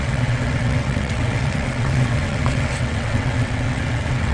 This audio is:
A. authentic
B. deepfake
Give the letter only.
B